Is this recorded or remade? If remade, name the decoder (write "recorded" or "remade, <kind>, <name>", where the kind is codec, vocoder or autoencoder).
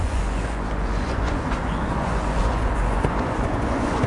remade, vocoder, Vocos